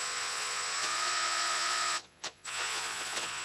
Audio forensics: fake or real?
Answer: fake